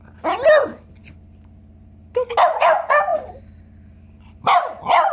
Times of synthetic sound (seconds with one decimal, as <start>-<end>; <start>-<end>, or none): none